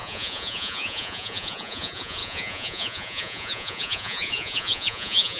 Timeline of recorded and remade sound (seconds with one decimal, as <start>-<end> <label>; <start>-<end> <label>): 0.0-5.4 remade